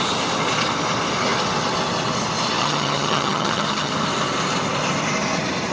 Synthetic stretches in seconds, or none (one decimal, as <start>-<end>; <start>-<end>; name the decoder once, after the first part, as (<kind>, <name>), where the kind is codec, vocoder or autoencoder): 2.6-3.9 (vocoder, HiFi-GAN)